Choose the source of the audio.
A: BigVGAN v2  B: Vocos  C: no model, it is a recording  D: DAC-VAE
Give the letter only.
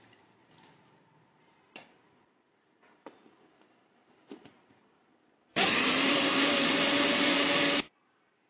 A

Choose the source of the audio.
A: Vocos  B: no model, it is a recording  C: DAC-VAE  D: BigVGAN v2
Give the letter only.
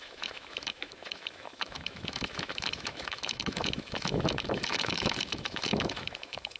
C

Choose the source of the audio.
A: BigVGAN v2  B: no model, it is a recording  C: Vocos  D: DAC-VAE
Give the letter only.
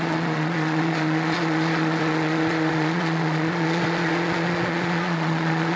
C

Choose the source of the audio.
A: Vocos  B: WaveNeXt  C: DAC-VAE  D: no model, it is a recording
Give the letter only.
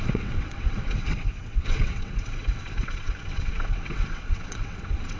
B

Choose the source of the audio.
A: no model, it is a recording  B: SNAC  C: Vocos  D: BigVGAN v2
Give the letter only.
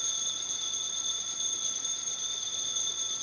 A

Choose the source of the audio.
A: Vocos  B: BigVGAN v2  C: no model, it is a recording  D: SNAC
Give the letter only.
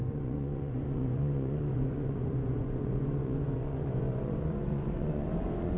A